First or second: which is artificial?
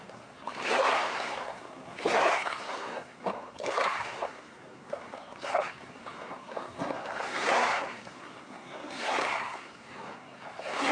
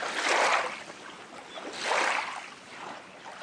first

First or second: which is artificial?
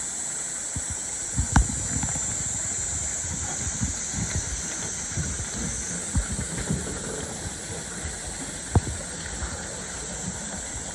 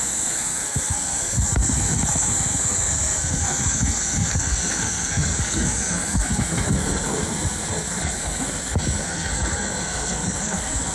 second